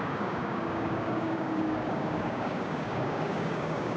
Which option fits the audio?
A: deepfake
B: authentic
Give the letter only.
A